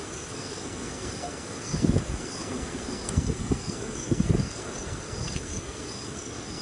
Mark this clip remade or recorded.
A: remade